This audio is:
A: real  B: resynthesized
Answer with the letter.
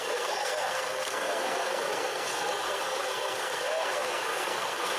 B